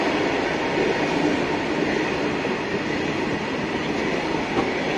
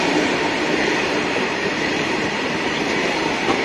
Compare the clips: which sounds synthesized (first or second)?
second